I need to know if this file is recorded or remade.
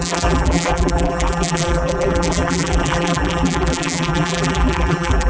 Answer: remade